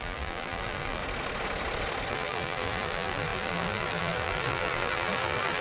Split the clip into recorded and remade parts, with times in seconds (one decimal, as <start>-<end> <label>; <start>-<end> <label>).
0.0-1.0 remade; 1.0-2.1 recorded; 2.1-5.6 remade